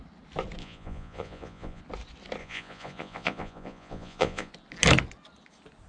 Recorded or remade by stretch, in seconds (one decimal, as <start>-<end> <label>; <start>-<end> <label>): 0.0-0.6 recorded; 0.6-1.8 remade; 1.8-2.4 recorded; 2.4-4.5 remade; 4.5-5.9 recorded